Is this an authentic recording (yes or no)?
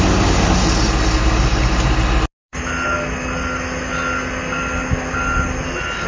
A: yes